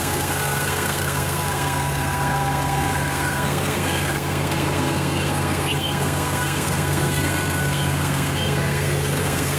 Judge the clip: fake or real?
fake